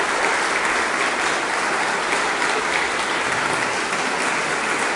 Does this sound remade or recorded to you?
recorded